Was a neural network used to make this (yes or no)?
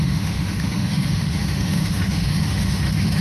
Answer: yes